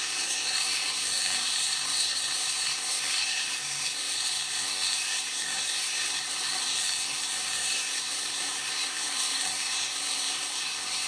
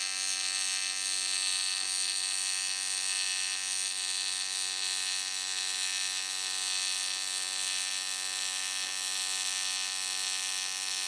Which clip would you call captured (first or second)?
second